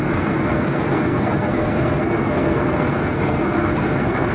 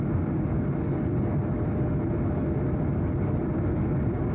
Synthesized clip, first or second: first